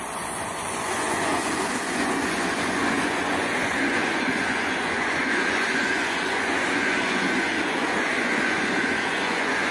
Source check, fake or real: fake